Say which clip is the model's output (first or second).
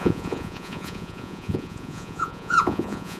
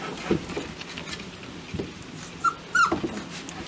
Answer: first